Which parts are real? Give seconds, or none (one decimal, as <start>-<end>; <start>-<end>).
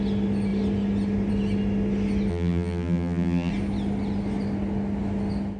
0.0-2.3; 3.5-5.6